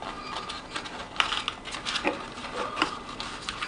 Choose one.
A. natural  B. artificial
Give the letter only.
A